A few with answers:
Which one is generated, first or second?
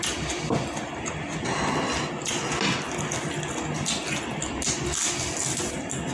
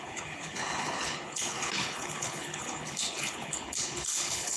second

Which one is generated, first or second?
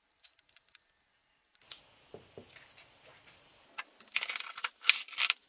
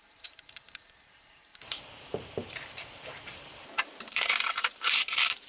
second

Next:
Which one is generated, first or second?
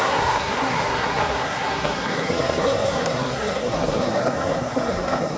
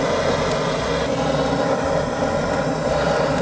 first